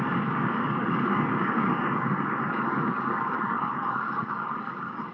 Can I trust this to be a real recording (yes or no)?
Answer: no